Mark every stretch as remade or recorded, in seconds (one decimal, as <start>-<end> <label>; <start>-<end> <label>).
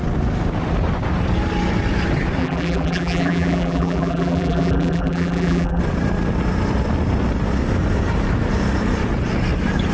0.0-2.4 recorded; 2.4-5.8 remade; 5.8-9.9 recorded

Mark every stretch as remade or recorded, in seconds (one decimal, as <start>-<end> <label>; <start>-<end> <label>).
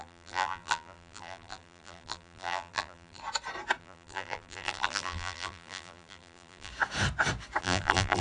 0.0-3.2 remade; 3.2-3.8 recorded; 3.8-6.7 remade; 6.7-7.6 recorded; 7.6-8.2 remade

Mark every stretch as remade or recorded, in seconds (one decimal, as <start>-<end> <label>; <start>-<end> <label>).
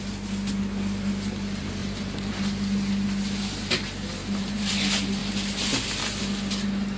0.0-1.8 recorded; 1.8-2.4 remade; 2.4-4.2 recorded; 4.2-4.7 remade; 4.7-7.0 recorded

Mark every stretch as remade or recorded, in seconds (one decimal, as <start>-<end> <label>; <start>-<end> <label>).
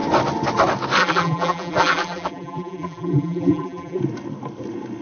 0.0-1.0 recorded; 1.0-4.0 remade; 4.0-5.0 recorded